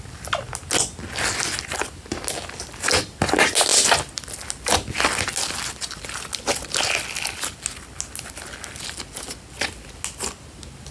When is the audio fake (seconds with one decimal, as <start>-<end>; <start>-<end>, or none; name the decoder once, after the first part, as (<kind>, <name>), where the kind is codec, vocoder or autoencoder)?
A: none